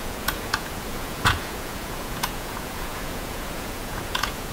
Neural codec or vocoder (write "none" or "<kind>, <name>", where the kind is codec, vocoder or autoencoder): vocoder, Vocos